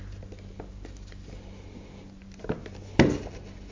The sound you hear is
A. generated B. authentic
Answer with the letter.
B